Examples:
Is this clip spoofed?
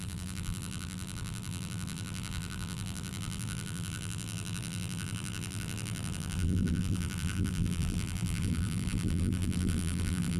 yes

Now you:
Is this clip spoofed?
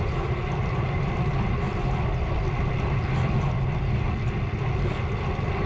no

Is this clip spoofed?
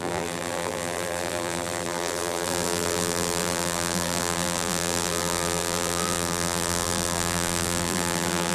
yes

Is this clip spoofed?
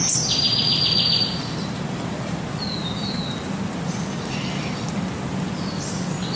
no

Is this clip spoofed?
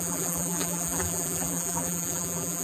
yes